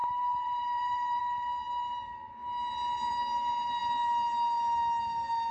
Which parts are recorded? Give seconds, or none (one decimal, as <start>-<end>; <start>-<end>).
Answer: 1.2-5.5